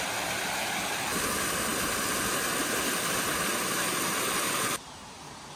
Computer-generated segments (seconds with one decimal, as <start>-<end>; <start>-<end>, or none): none